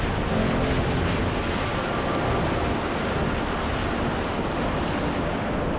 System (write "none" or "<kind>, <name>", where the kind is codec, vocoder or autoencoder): none